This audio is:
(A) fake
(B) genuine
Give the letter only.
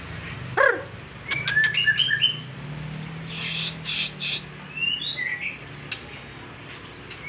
B